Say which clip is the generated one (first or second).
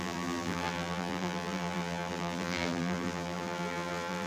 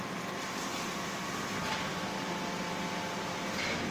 first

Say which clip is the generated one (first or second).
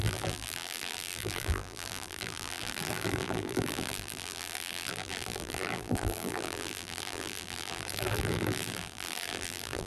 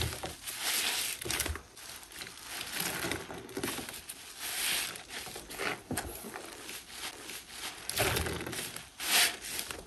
first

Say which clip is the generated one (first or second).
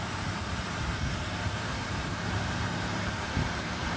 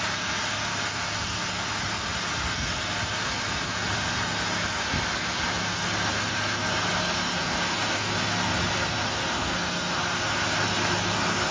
first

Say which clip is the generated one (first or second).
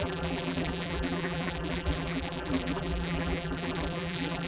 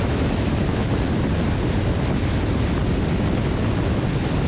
first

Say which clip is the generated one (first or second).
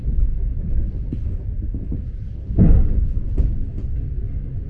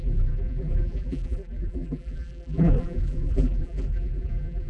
second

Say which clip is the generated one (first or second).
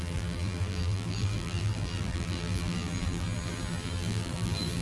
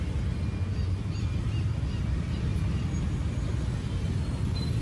first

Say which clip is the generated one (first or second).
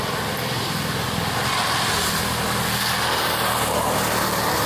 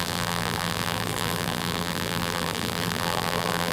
second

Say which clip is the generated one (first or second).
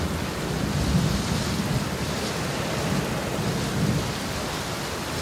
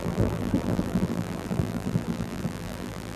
second